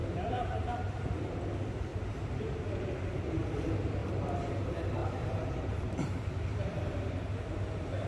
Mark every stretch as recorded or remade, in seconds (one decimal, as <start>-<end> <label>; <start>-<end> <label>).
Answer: 0.0-0.8 remade; 0.8-1.9 recorded; 1.9-3.5 remade; 3.5-4.0 recorded; 4.0-4.5 remade; 4.5-5.0 recorded; 5.0-7.1 remade; 7.1-8.1 recorded